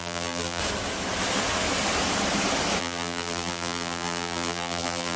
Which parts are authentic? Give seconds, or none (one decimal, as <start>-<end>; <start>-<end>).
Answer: 0.6-2.8